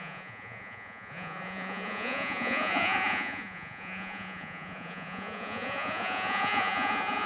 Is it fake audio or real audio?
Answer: fake